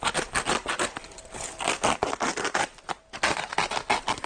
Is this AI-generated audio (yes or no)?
no